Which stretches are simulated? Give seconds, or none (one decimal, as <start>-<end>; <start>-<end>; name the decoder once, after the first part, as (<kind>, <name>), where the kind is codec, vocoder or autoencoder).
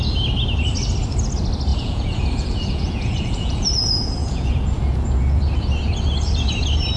1.7-5.4 (vocoder, Vocos)